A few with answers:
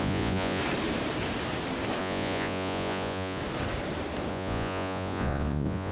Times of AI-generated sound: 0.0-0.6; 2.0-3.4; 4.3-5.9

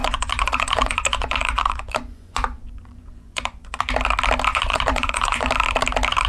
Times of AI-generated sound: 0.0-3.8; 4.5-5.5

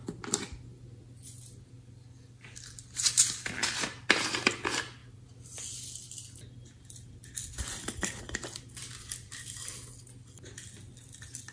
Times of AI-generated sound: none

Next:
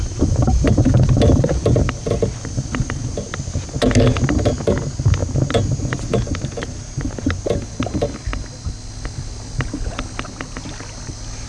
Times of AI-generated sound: none